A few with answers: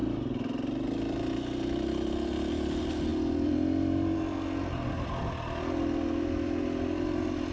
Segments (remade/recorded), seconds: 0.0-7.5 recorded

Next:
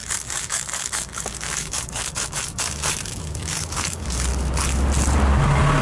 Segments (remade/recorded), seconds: 0.0-4.3 remade; 4.3-5.8 recorded